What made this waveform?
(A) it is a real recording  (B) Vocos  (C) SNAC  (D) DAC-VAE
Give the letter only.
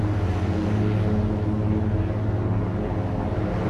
A